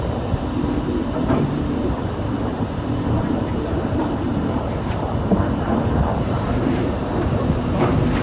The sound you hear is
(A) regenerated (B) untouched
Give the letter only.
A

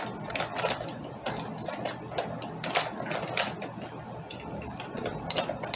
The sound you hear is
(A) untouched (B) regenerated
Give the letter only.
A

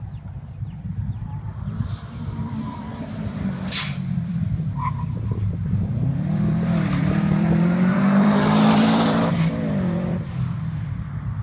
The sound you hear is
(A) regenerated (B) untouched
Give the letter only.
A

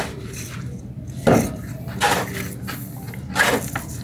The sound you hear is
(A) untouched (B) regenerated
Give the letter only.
A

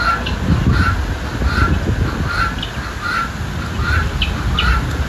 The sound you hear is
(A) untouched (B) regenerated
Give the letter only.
A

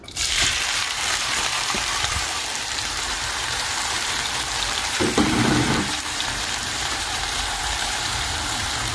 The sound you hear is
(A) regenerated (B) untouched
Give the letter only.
A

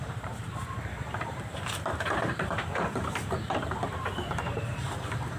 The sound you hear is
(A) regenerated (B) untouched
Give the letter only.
A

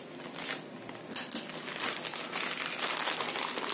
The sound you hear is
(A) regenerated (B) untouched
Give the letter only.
B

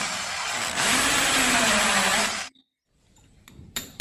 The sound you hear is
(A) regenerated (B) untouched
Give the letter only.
A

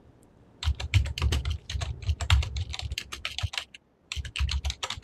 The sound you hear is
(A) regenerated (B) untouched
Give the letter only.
A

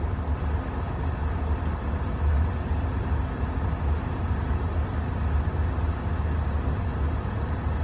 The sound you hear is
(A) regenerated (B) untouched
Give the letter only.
B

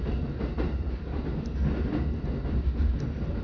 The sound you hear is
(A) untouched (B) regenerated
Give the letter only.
A